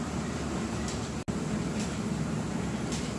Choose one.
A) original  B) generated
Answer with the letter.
A